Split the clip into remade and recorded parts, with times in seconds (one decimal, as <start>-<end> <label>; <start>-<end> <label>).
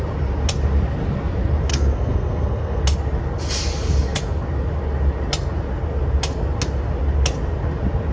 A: 0.0-1.7 recorded; 1.7-2.8 remade; 2.8-8.1 recorded